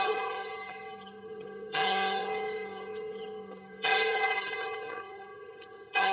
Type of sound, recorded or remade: remade